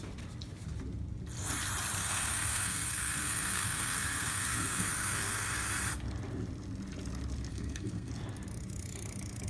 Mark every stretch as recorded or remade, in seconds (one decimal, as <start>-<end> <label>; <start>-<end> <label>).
0.0-2.0 recorded; 2.0-5.7 remade; 5.7-7.5 recorded; 7.5-8.1 remade; 8.1-9.5 recorded